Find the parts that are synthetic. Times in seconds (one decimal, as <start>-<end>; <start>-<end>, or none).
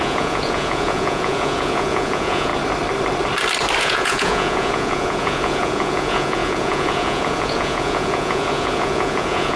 0.0-2.5; 3.8-9.6